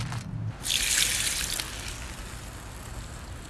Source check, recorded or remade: recorded